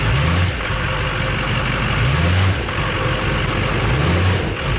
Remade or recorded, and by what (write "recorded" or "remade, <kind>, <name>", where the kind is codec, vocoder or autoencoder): recorded